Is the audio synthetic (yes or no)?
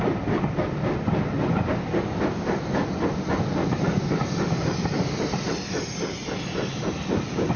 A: no